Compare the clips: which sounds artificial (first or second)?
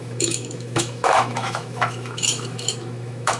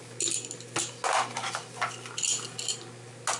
first